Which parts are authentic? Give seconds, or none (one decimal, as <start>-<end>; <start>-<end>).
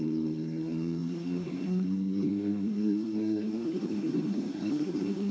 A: none